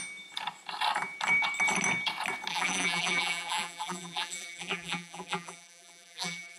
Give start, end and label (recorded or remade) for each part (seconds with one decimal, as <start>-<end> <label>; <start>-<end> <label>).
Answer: 0.0-2.5 recorded; 2.5-6.6 remade